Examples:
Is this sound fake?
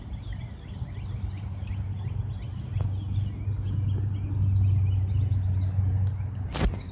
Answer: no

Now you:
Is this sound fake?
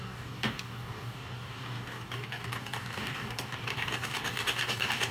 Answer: yes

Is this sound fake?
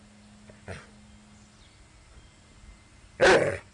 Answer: no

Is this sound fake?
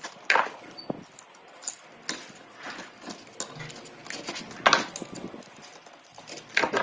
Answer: no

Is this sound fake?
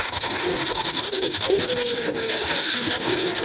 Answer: yes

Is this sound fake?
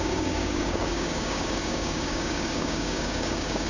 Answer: yes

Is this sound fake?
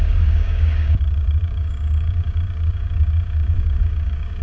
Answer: yes